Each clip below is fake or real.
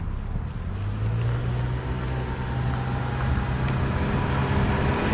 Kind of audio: real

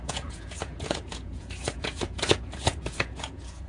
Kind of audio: fake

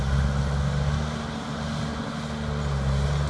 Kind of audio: real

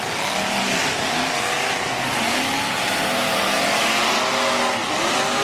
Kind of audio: real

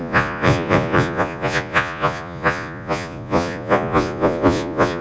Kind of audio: fake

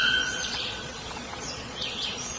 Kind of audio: fake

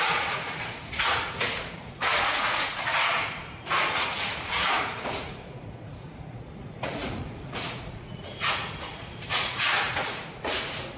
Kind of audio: fake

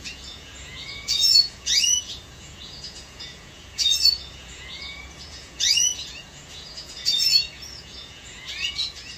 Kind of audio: fake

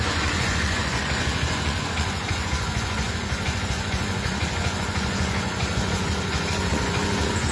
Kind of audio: fake